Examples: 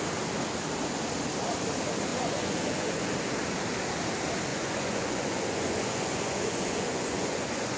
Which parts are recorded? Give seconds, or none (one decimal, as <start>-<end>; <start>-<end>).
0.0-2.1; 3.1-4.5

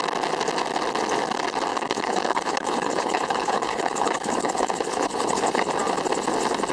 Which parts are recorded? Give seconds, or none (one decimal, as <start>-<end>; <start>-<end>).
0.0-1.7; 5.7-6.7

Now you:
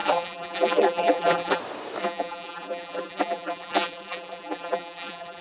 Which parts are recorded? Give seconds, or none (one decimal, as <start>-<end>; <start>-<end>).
1.6-2.0

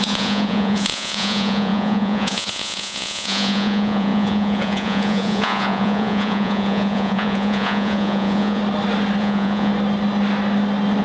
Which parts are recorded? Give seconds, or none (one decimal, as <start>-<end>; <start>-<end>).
8.6-9.2; 9.7-11.0

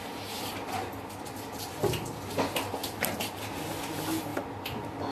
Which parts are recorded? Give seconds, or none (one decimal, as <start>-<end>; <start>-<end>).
0.0-5.1

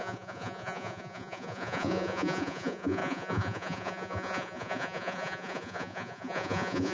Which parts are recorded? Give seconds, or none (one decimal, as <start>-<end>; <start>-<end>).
none